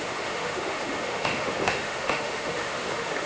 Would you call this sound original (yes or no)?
no